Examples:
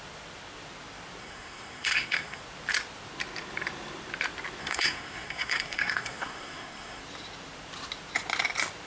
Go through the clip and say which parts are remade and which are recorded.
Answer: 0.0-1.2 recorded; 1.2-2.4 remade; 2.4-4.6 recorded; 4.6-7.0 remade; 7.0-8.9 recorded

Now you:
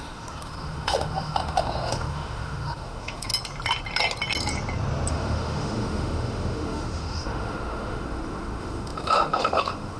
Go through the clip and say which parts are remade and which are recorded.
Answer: 0.0-3.3 remade; 3.3-5.1 recorded; 5.1-10.0 remade